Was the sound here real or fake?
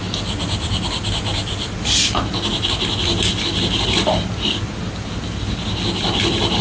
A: real